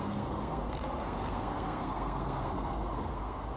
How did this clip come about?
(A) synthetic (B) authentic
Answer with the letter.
A